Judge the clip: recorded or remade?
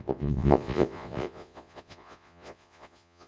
remade